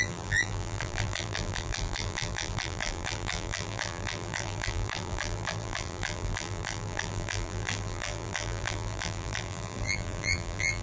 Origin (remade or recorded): remade